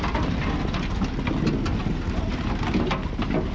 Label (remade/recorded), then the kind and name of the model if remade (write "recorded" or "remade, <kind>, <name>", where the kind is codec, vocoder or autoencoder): recorded